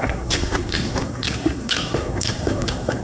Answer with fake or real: fake